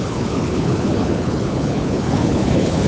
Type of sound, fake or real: fake